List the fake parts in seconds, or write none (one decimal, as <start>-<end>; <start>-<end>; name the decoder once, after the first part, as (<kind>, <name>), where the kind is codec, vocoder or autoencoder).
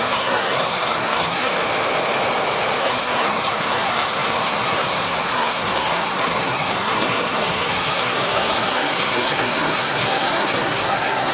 0.0-1.5 (codec, SNAC); 2.8-11.3